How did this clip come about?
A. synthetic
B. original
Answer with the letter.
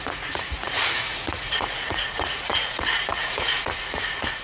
A